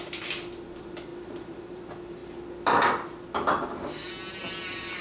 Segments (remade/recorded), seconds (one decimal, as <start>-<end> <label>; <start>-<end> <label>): 0.0-1.1 recorded; 1.1-1.8 remade; 1.8-5.0 recorded